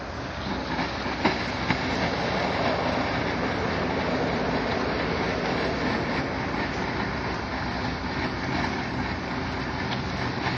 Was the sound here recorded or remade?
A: recorded